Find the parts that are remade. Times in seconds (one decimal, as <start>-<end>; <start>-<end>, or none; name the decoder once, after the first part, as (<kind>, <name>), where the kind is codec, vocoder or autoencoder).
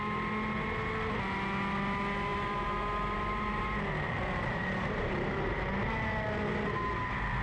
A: 2.3-5.3 (vocoder, BigVGAN v2)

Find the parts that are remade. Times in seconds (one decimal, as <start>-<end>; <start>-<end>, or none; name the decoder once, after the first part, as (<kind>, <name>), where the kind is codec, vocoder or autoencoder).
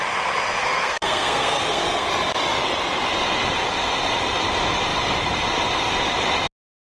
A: 0.6-2.1 (codec, SNAC)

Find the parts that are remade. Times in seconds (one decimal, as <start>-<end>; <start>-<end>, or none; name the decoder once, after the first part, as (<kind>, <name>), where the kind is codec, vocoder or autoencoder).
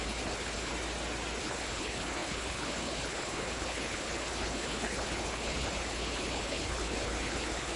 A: 0.0-0.7 (codec, HILCodec); 1.4-7.8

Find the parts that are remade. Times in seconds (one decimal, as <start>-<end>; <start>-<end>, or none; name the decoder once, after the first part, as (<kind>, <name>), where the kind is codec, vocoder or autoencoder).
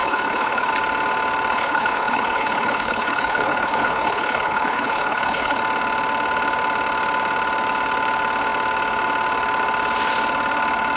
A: 0.0-0.7 (codec, HILCodec); 1.5-5.6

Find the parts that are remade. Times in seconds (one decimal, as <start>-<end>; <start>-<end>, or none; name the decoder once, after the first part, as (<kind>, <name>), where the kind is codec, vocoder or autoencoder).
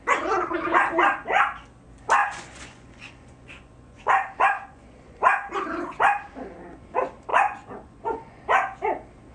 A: 2.2-5.2 (vocoder, Vocos); 7.3-8.4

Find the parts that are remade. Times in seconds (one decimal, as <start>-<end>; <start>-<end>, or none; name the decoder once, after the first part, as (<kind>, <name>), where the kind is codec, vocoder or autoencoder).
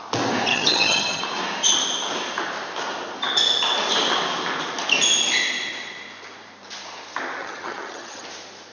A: 0.5-1.2 (vocoder, HiFi-GAN); 7.4-8.2